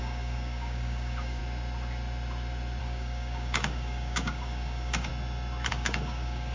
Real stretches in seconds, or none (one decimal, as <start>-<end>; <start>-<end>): 1.4-2.8; 5.1-5.7